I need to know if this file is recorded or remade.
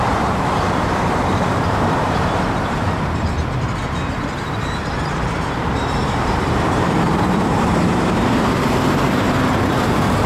remade